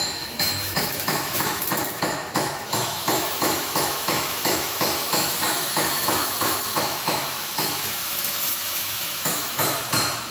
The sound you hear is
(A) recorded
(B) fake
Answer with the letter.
B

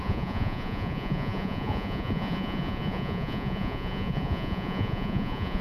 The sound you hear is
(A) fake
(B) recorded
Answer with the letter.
A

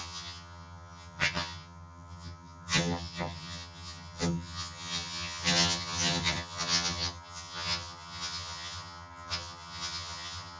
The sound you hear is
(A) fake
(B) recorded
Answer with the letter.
A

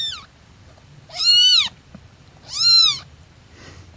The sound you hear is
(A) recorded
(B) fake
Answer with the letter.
B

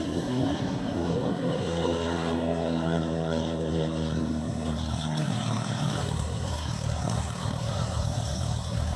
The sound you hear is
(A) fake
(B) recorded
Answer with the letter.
A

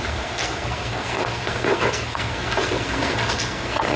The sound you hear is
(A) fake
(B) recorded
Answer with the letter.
A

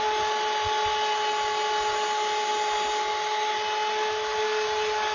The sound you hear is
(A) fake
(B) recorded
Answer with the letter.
B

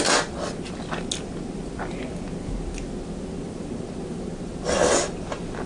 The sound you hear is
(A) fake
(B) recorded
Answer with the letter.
B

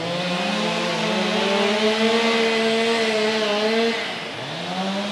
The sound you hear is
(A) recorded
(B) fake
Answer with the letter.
A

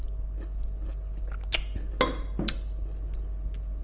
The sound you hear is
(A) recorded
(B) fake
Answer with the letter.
A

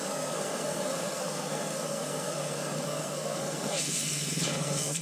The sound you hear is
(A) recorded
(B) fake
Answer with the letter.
B